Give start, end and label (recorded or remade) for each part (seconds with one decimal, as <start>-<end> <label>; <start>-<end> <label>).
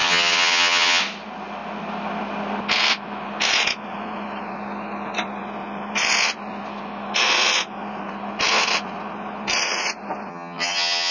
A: 0.0-1.0 remade; 1.0-10.3 recorded; 10.3-11.1 remade